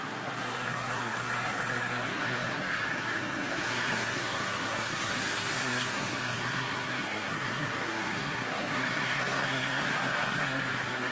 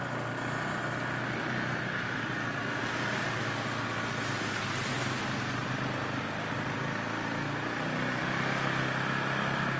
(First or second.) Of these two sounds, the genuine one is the second